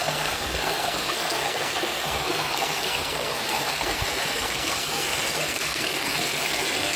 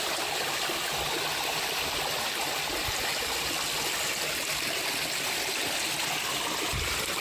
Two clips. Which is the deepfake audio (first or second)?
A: first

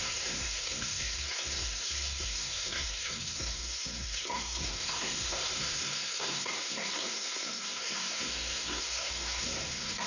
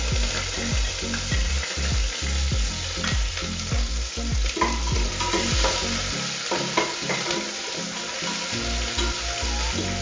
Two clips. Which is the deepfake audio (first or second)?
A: first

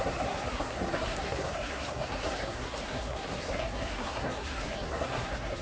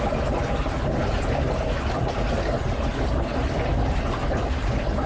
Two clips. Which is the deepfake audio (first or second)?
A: first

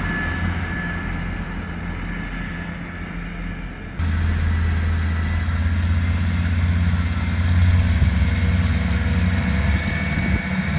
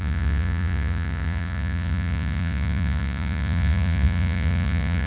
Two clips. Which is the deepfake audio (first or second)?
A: second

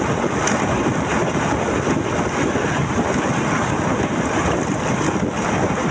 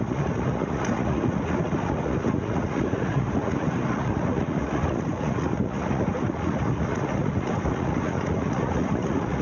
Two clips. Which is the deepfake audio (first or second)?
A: second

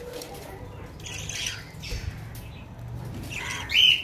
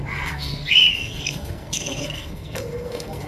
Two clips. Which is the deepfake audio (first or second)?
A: second